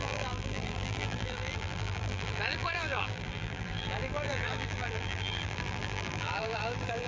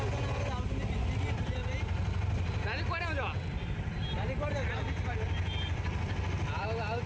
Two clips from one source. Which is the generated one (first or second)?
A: first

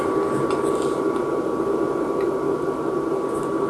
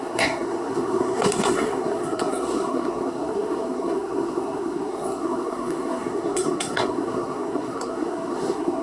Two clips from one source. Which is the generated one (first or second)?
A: second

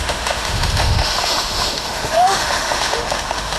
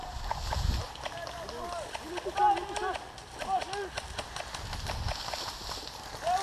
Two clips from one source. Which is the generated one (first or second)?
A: first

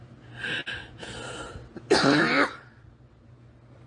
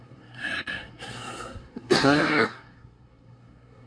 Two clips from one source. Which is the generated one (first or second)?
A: second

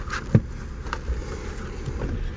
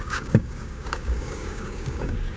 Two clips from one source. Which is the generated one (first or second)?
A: second